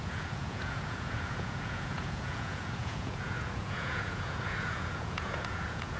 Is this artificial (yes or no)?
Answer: yes